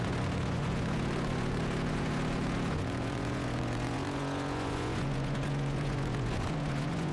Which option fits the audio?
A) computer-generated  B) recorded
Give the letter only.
A